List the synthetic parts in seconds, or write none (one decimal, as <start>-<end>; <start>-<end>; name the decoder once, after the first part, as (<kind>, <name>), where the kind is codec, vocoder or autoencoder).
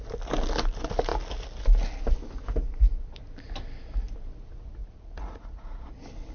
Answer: 4.8-5.8 (vocoder, Vocos)